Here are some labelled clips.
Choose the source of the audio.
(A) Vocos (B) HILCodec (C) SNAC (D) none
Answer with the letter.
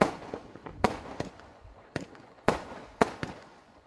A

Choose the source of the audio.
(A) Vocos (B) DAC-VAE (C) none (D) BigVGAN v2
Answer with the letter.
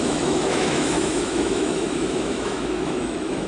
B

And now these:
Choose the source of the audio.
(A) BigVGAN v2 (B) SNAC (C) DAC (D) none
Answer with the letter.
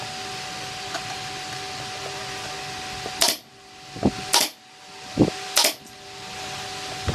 D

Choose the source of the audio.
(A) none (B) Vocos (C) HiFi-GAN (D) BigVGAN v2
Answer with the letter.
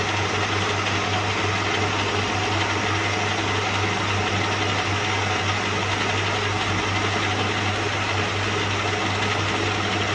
A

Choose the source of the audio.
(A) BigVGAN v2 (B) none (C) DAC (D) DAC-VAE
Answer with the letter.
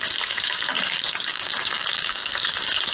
C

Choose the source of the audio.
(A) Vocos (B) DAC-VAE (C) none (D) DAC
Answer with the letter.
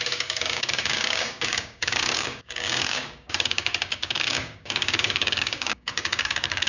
D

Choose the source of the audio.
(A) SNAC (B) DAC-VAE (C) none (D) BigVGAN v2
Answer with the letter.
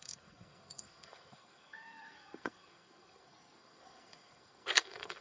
A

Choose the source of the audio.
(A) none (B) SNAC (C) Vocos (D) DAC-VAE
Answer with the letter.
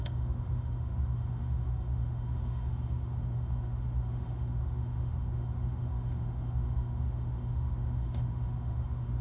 D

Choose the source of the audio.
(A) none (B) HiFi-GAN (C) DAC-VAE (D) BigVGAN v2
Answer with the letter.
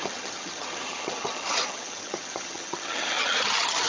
B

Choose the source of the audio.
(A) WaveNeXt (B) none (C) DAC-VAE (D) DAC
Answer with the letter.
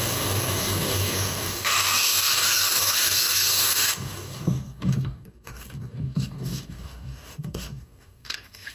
D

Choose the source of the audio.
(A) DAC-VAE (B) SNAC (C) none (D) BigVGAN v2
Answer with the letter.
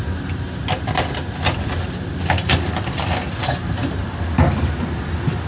C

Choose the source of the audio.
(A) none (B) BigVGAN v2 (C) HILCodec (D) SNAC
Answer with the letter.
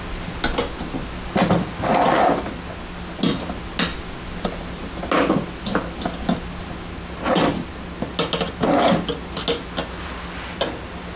A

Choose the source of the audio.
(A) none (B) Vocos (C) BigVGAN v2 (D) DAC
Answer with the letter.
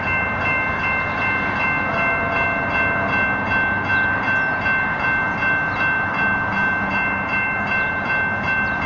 A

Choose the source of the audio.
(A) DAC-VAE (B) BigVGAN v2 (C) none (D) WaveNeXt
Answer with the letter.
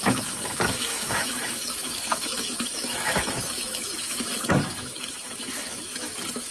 A